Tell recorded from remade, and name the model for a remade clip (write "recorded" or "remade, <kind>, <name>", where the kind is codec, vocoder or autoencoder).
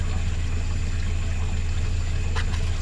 recorded